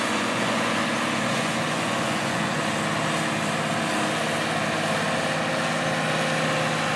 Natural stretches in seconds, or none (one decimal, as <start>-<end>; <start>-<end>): 0.8-1.3; 2.6-7.0